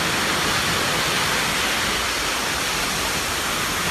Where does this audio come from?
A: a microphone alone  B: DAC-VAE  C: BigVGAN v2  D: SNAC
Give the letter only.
A